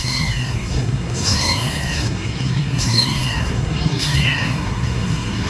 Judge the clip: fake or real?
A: fake